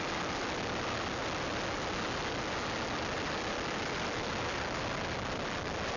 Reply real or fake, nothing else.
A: real